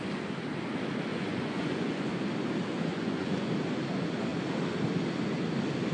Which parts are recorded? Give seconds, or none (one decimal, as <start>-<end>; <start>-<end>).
0.0-1.1; 2.1-2.9; 3.5-5.9